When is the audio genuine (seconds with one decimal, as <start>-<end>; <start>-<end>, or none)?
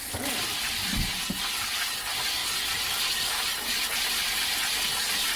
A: 0.0-0.4; 1.9-5.4